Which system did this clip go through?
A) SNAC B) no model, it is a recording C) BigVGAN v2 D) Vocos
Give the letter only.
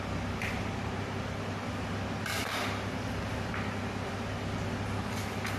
B